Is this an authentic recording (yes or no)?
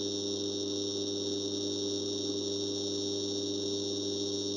yes